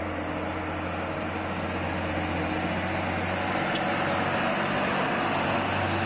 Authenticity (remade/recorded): recorded